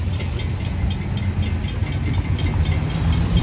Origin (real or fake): real